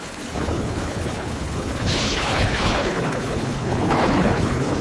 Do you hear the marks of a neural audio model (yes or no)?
yes